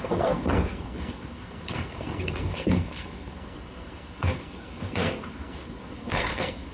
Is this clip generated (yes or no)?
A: yes